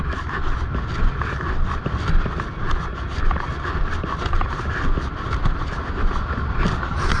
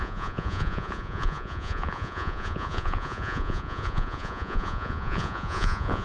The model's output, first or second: second